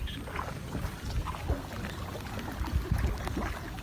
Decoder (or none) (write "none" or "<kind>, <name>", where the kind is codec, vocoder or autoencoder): none